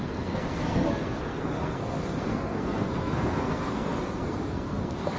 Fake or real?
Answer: fake